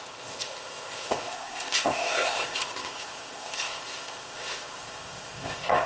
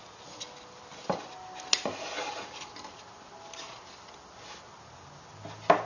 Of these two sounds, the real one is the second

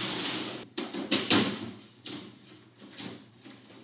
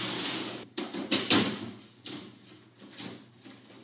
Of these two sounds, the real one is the second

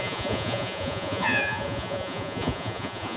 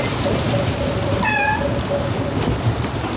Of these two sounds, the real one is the second